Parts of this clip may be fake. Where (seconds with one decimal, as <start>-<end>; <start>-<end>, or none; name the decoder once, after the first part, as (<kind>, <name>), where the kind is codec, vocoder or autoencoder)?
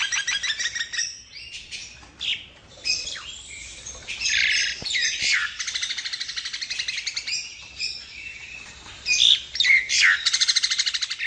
0.0-11.3 (vocoder, BigVGAN v2)